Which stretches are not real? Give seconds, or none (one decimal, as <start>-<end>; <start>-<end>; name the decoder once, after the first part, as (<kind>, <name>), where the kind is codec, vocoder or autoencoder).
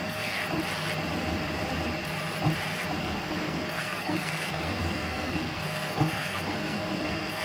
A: 0.0-0.4 (codec, SNAC); 3.0-7.4